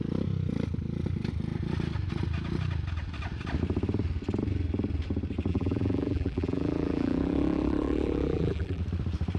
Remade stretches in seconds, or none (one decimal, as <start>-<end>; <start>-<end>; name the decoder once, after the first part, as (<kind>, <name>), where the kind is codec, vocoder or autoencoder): 5.5-8.8 (vocoder, BigVGAN v2)